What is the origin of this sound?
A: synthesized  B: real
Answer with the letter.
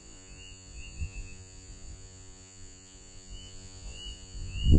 A